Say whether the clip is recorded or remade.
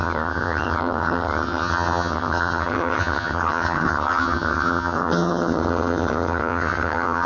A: remade